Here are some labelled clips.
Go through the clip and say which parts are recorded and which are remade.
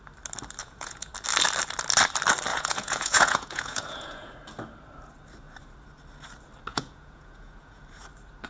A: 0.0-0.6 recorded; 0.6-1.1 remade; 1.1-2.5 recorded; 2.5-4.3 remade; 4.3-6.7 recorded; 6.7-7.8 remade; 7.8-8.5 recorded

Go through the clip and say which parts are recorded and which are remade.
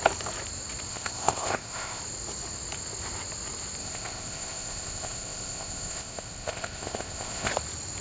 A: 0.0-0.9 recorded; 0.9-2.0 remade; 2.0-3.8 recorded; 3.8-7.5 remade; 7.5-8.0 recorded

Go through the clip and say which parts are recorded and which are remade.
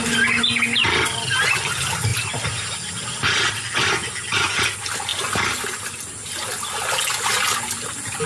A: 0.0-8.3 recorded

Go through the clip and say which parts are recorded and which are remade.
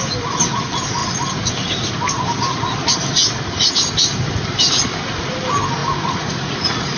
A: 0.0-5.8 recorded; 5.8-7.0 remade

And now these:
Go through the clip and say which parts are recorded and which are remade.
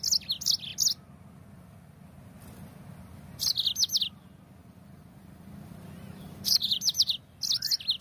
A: 0.0-4.6 recorded; 4.6-7.2 remade; 7.2-8.0 recorded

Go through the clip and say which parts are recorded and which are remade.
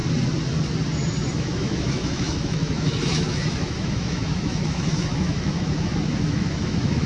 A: 0.0-1.4 recorded; 1.4-7.1 remade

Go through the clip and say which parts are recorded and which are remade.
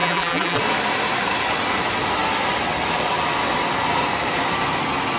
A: 0.0-0.6 remade; 0.6-5.2 recorded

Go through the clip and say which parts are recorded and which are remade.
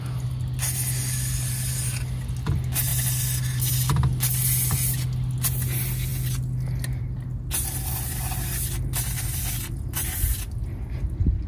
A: 0.0-11.5 recorded